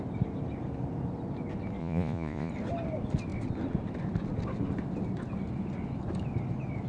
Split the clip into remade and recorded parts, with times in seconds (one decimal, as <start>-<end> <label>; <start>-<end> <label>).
0.0-1.8 recorded; 1.8-2.5 remade; 2.5-6.9 recorded